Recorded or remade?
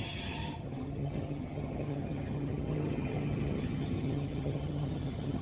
remade